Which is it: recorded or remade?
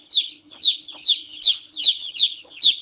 remade